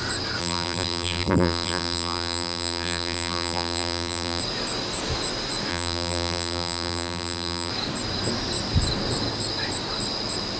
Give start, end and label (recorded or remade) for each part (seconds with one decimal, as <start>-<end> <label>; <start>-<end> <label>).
0.0-0.4 recorded; 0.4-4.4 remade; 4.4-5.7 recorded; 5.7-7.7 remade; 7.7-10.6 recorded